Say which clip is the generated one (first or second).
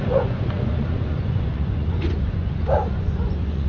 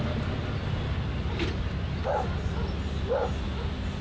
first